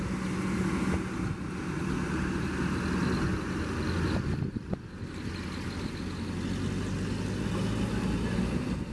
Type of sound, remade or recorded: recorded